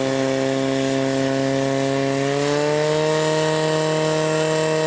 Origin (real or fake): real